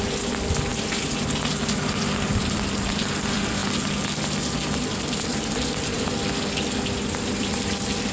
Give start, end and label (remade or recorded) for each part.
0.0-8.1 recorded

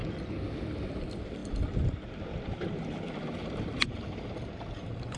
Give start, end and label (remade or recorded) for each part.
0.0-1.4 recorded; 1.4-4.1 remade; 4.1-5.2 recorded